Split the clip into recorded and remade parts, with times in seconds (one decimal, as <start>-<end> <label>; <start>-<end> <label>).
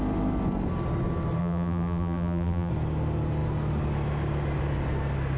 0.0-1.4 recorded; 1.4-2.7 remade; 2.7-5.4 recorded